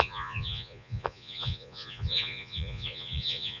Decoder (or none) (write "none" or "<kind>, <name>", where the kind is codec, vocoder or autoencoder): vocoder, Vocos